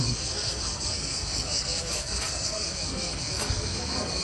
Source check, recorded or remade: remade